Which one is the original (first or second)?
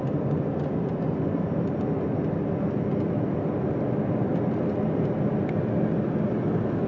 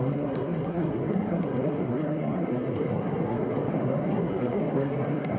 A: first